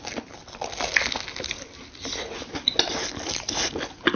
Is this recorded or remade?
recorded